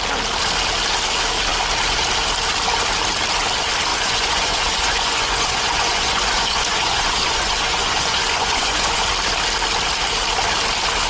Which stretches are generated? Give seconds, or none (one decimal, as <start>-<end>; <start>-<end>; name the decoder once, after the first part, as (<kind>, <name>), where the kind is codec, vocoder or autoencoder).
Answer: 3.9-9.0 (vocoder, Vocos)